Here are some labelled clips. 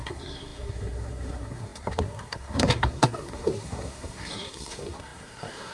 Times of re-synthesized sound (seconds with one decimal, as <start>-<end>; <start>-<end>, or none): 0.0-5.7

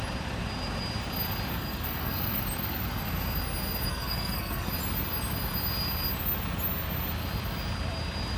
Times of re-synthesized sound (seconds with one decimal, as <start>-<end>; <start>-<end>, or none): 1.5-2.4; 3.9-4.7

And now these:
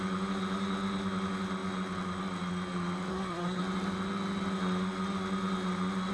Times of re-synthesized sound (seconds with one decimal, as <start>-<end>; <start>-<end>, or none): 3.1-3.6